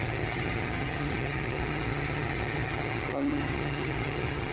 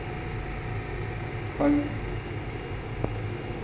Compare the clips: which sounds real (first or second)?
second